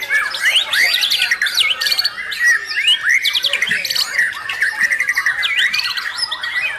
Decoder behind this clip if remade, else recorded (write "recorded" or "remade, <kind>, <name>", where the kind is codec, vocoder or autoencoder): recorded